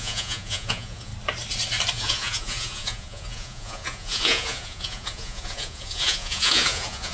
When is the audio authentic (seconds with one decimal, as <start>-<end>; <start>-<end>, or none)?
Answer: 1.1-1.9